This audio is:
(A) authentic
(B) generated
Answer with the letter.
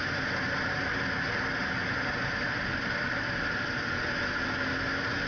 A